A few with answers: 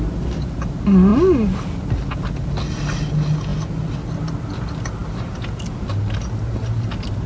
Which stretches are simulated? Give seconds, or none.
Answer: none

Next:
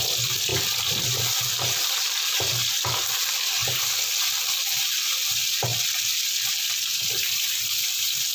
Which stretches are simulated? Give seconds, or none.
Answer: 0.0-3.6 (vocoder, BigVGAN v2); 4.2-6.9; 7.7-8.3

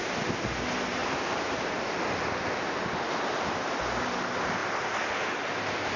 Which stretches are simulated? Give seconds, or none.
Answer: 1.0-3.8 (vocoder, BigVGAN v2)

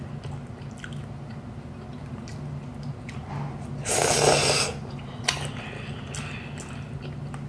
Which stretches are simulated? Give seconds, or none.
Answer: none

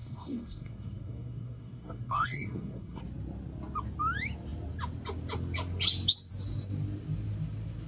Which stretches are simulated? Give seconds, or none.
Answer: 0.0-3.0 (codec, SNAC)

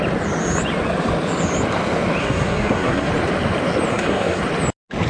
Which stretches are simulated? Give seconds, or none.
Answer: 2.2-3.1 (codec, SNAC); 3.9-4.4

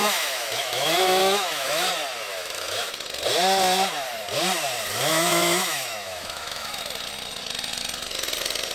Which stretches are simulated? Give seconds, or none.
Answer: 0.0-1.9 (autoencoder, DAC-VAE); 2.3-2.9; 5.1-6.8